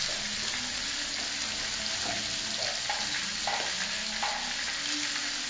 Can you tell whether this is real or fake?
real